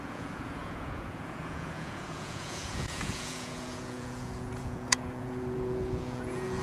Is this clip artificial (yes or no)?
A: yes